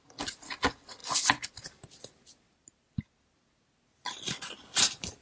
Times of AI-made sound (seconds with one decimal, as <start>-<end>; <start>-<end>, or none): none